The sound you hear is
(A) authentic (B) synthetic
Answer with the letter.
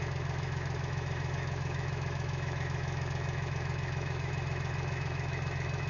B